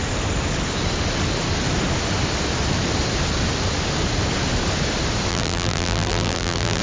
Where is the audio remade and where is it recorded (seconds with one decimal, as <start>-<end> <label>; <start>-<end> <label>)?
0.0-5.3 recorded; 5.3-6.8 remade